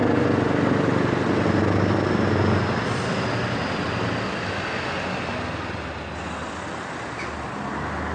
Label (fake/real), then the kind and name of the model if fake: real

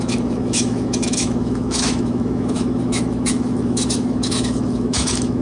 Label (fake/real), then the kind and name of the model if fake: fake, autoencoder, DAC-VAE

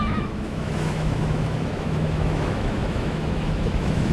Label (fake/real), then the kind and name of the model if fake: fake, autoencoder, DAC-VAE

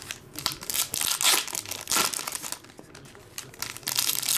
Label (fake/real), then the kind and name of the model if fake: real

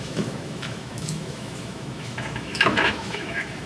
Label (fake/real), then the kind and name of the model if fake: fake, autoencoder, DAC-VAE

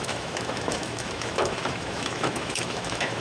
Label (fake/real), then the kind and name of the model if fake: fake, autoencoder, DAC-VAE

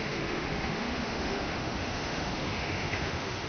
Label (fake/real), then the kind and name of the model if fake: fake, autoencoder, DAC-VAE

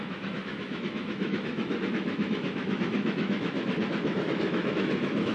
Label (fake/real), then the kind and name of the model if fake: fake, autoencoder, DAC-VAE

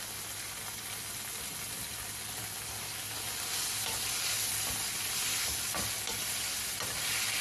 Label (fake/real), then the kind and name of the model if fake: real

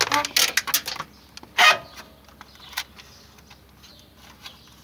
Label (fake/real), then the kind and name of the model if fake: real